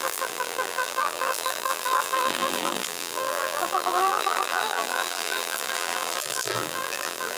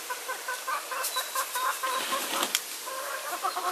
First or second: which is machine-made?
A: first